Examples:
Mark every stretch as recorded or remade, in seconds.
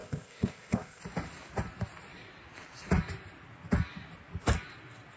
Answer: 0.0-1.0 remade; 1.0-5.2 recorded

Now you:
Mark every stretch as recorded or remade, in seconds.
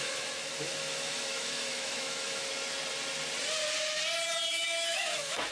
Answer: 0.0-2.5 remade; 2.5-4.5 recorded; 4.5-5.5 remade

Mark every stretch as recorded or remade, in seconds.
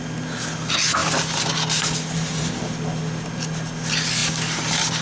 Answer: 0.0-5.0 recorded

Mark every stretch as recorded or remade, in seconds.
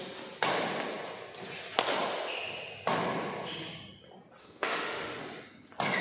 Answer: 0.0-4.4 recorded; 4.4-5.2 remade; 5.2-6.0 recorded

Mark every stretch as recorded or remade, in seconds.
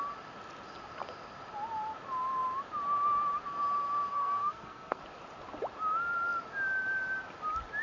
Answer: 0.0-4.1 recorded; 4.1-5.0 remade; 5.0-7.8 recorded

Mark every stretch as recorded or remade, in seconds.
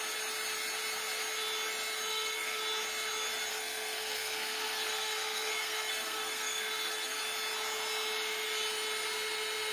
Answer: 0.0-2.1 recorded; 2.1-2.6 remade; 2.6-3.5 recorded; 3.5-7.2 remade; 7.2-9.7 recorded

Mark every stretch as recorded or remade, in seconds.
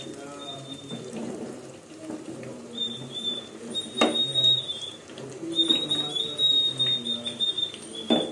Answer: 0.0-0.4 recorded; 0.4-3.5 remade; 3.5-4.3 recorded; 4.3-6.2 remade; 6.2-8.3 recorded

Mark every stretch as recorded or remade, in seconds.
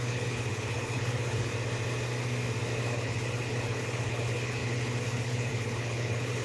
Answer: 0.0-1.5 remade; 1.5-2.8 recorded; 2.8-6.4 remade